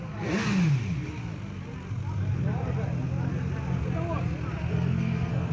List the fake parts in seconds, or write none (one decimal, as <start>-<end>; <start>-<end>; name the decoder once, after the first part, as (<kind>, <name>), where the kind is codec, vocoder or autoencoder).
4.7-5.5 (codec, SNAC)